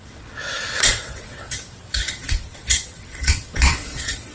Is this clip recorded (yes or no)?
no